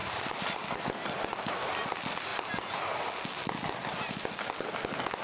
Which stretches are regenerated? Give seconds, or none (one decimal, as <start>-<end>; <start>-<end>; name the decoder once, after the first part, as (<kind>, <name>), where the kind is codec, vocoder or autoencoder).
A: 0.0-0.8 (vocoder, BigVGAN v2)